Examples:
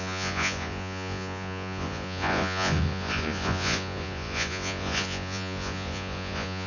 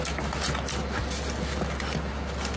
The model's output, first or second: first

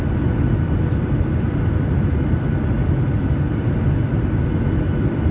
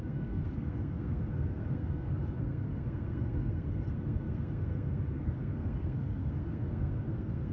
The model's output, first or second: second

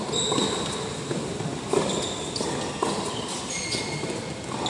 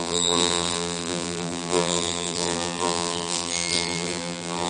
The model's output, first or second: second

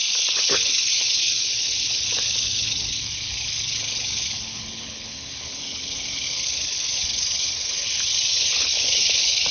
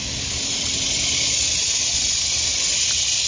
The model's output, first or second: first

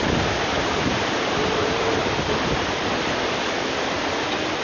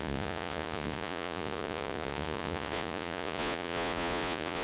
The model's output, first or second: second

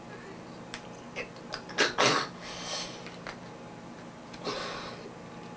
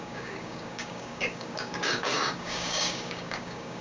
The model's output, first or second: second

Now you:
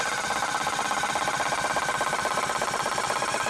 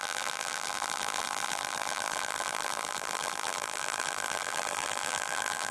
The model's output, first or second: second